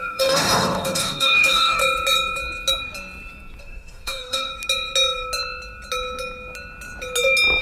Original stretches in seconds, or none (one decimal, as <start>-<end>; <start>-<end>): 1.8-3.6; 4.5-7.6

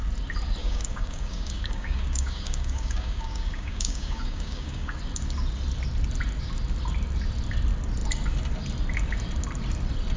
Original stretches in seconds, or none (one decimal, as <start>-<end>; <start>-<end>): 0.0-0.6; 5.0-10.2

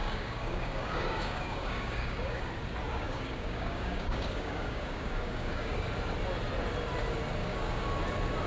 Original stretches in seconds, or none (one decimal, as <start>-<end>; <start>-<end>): 2.4-2.9; 5.9-7.4; 8.0-8.5